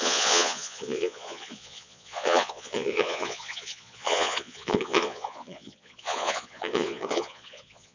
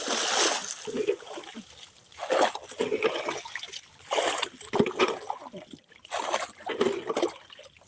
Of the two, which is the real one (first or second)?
second